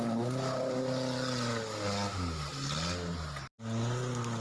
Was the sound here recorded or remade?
recorded